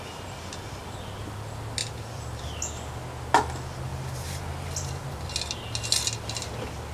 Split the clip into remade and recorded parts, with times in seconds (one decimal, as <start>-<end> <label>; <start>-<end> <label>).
0.0-1.8 recorded; 1.8-2.4 remade; 2.4-3.9 recorded; 3.9-5.3 remade; 5.3-6.9 recorded

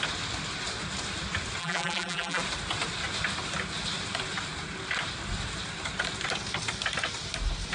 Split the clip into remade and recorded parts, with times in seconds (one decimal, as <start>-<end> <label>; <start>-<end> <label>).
0.0-1.6 recorded; 1.6-2.4 remade; 2.4-7.7 recorded

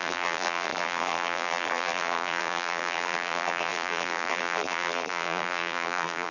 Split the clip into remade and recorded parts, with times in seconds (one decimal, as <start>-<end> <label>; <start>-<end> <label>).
0.0-6.3 remade

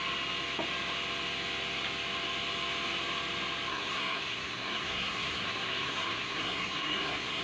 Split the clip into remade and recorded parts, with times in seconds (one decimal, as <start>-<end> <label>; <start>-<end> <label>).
0.0-3.7 recorded; 3.7-7.4 remade

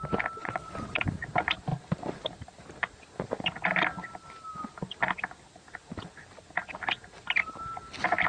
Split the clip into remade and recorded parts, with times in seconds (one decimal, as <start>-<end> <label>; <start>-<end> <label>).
0.0-0.4 recorded; 0.4-1.0 remade; 1.0-8.3 recorded